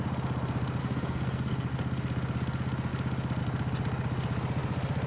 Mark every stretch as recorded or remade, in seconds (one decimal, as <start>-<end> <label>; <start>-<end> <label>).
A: 0.0-0.8 recorded; 0.8-1.7 remade; 1.7-5.1 recorded